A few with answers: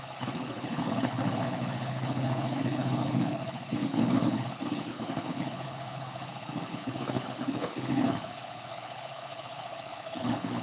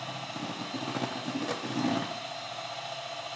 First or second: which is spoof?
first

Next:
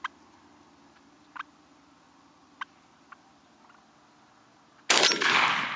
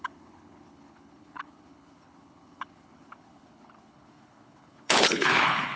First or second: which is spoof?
second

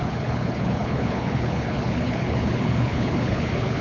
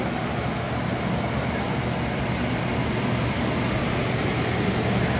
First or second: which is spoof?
first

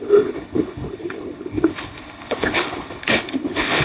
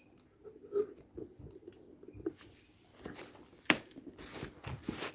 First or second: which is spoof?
first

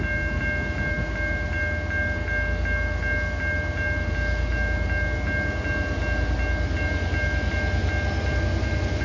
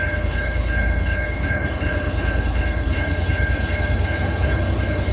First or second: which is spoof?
second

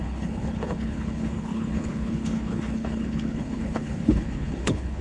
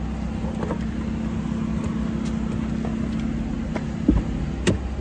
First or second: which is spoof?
first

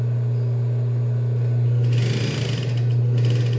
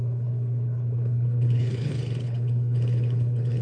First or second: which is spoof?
second